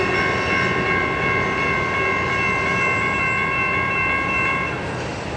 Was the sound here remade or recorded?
recorded